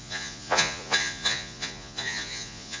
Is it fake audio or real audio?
fake